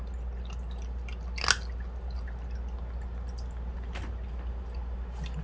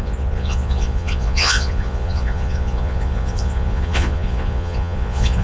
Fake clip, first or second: second